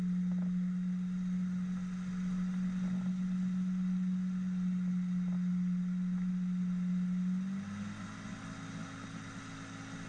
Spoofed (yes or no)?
no